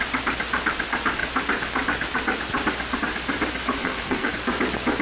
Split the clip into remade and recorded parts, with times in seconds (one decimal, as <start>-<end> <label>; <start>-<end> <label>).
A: 0.0-3.8 recorded; 3.8-4.3 remade; 4.3-5.0 recorded